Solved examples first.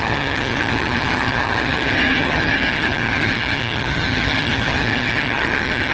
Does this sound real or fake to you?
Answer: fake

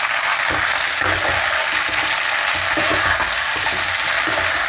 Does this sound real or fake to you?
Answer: real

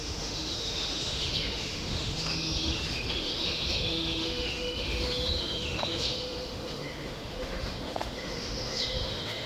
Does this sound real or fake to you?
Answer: fake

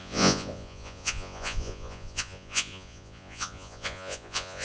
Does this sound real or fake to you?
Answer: fake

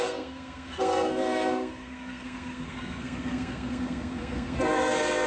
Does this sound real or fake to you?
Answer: fake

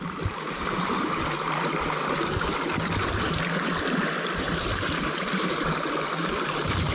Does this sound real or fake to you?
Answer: real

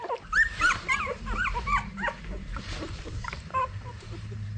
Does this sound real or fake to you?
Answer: fake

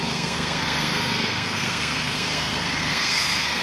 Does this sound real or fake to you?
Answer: fake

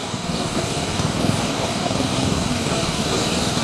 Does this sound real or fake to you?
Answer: fake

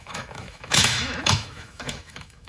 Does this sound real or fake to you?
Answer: fake